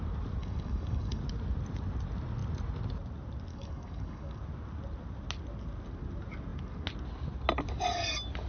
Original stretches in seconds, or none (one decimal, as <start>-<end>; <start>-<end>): 0.0-0.4; 1.2-3.5; 4.4-8.5